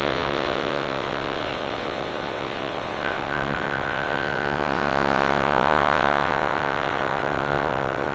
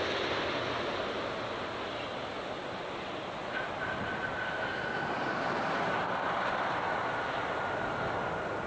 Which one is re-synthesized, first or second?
first